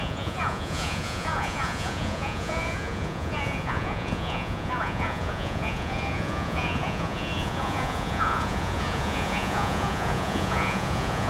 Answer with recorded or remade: remade